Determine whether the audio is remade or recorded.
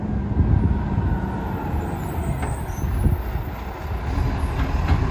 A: recorded